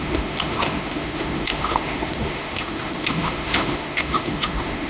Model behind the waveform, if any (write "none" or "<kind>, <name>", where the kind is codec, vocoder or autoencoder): autoencoder, DAC-VAE